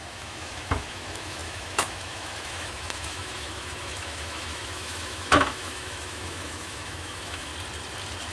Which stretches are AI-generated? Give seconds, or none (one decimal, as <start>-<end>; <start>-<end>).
0.0-7.5

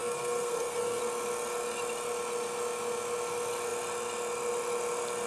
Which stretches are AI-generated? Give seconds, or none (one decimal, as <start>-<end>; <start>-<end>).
0.0-1.0

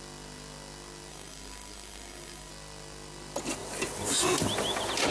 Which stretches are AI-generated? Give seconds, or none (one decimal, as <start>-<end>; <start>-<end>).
1.1-2.5

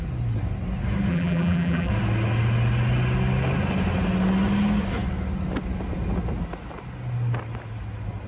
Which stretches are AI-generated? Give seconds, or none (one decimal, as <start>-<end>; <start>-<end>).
1.1-1.9

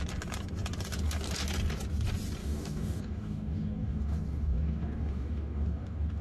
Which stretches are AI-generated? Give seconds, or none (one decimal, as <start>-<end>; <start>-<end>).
2.4-6.2